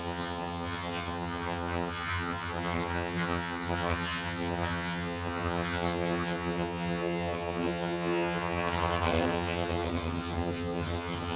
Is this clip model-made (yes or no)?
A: yes